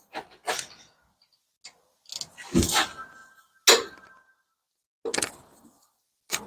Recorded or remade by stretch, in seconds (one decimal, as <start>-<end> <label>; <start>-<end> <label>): 0.0-6.5 recorded

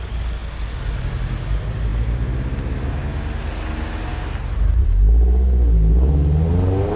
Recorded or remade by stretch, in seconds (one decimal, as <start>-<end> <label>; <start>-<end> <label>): 0.0-7.0 recorded

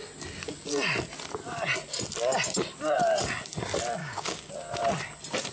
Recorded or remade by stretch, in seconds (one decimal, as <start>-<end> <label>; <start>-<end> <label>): 0.0-4.0 recorded; 4.0-4.5 remade; 4.5-5.5 recorded

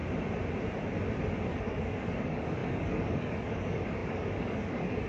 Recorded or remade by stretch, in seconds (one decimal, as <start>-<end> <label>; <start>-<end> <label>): 0.0-1.5 recorded; 1.5-5.1 remade